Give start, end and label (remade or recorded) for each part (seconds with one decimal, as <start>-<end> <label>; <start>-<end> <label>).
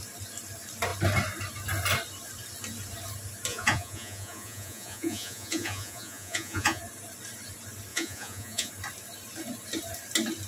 0.0-3.5 recorded; 3.5-6.8 remade; 6.8-7.9 recorded; 7.9-8.7 remade; 8.7-10.5 recorded